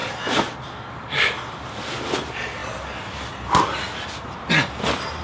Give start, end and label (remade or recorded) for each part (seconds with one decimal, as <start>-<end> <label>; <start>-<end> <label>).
0.0-5.2 recorded